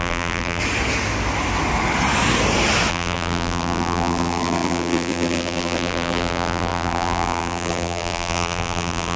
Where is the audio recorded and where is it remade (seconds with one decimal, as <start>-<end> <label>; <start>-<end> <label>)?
0.0-0.6 remade; 0.6-2.9 recorded; 2.9-9.2 remade